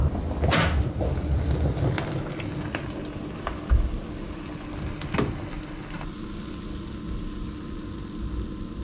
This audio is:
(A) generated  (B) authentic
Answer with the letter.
B